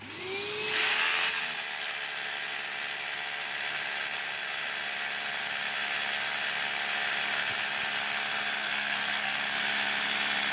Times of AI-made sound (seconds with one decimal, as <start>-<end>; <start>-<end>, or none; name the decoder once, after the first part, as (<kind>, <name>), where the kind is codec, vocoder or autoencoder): 8.6-9.4 (codec, SNAC)